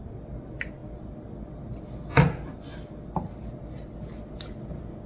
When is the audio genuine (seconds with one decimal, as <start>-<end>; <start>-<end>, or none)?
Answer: 0.0-5.1